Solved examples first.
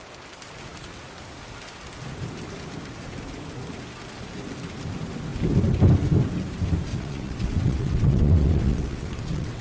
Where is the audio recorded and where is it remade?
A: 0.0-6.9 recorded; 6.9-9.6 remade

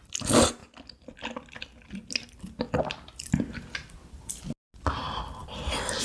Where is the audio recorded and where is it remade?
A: 0.0-6.0 recorded

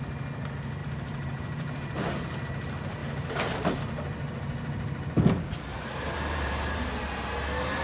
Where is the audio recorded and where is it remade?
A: 0.0-0.8 recorded; 0.8-2.0 remade; 2.0-3.0 recorded; 3.0-3.8 remade; 3.8-5.7 recorded; 5.7-6.9 remade; 6.9-7.8 recorded